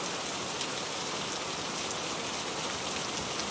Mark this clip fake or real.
fake